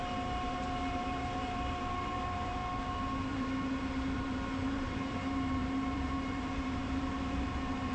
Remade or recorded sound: remade